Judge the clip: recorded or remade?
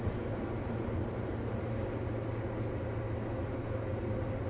recorded